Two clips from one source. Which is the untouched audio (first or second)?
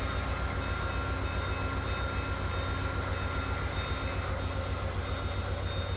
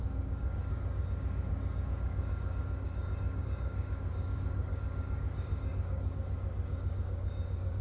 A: first